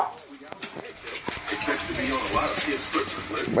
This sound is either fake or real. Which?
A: real